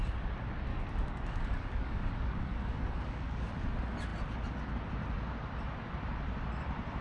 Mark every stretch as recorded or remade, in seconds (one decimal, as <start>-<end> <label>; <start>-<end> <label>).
0.0-0.7 recorded; 0.7-3.5 remade; 3.5-7.0 recorded

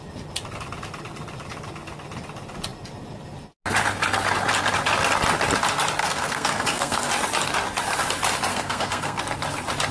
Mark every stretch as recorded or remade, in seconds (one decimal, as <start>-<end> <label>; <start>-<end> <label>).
0.0-6.0 recorded; 6.0-7.1 remade; 7.1-8.5 recorded; 8.5-9.2 remade; 9.2-9.9 recorded